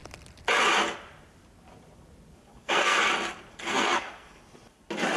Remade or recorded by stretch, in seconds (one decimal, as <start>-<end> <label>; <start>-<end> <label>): 0.0-2.5 recorded; 2.5-3.1 remade; 3.1-3.5 recorded; 3.5-4.4 remade; 4.4-5.2 recorded